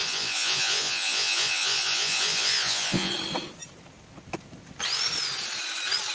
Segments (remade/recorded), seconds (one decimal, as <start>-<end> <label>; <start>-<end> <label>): 0.0-3.1 remade; 3.1-6.1 recorded